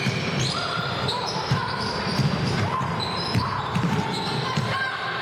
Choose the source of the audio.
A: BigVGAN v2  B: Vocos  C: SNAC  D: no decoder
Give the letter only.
A